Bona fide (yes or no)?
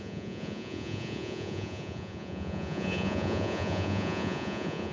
no